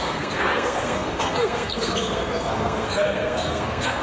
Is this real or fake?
fake